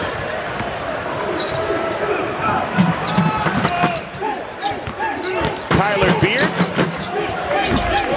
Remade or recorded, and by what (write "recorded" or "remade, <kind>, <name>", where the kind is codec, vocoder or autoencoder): recorded